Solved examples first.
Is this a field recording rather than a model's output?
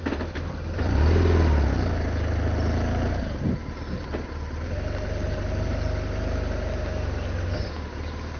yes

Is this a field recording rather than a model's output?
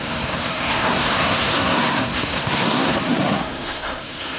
no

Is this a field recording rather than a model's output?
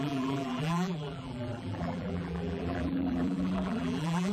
no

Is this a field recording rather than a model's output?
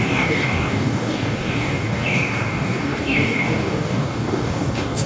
no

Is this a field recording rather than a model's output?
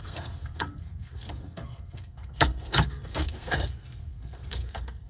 no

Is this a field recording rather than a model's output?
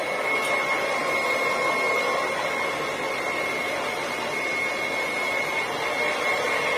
yes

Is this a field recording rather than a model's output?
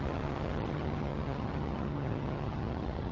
no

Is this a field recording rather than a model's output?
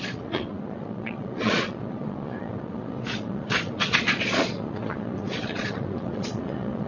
no